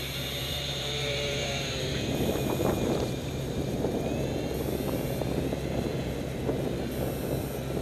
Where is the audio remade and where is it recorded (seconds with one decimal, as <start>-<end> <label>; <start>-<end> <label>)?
0.0-0.4 recorded; 0.4-4.0 remade; 4.0-7.8 recorded